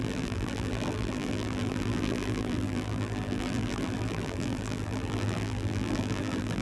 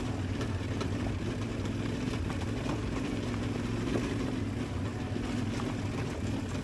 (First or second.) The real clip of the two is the second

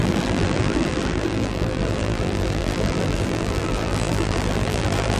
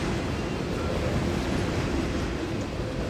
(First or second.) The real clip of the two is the second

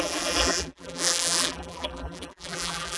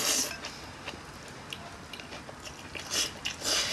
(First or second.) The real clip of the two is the second